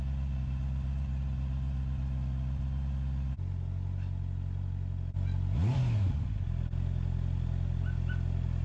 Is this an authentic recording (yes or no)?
yes